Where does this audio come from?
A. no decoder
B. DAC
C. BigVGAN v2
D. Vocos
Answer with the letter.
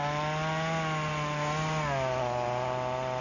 A